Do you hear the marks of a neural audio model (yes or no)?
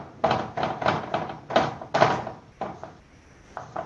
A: no